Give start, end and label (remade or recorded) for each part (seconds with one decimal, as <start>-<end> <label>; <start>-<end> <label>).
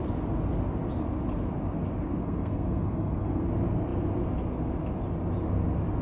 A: 0.0-2.2 recorded; 2.2-3.4 remade; 3.4-6.0 recorded